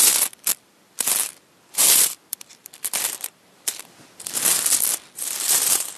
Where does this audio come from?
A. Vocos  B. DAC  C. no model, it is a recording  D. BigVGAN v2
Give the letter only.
D